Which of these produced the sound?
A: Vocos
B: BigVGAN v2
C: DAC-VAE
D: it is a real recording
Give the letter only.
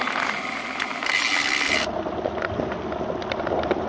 D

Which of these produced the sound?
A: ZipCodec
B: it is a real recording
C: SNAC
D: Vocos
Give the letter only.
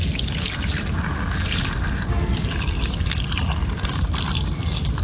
B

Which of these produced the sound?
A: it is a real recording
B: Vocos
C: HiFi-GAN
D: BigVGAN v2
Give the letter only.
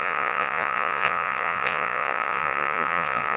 B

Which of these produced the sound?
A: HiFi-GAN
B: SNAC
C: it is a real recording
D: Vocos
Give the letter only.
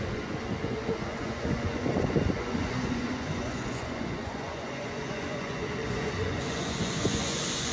D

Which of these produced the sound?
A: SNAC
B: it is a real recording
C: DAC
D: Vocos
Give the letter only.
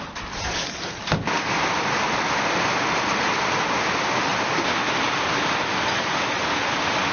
B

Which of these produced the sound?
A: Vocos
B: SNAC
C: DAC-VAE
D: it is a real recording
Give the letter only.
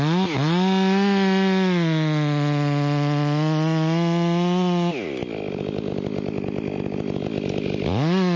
D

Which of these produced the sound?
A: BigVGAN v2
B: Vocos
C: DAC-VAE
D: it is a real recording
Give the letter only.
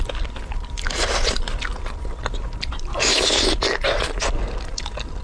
D